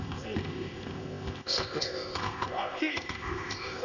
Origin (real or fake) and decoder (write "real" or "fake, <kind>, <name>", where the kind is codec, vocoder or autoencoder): fake, codec, ZipCodec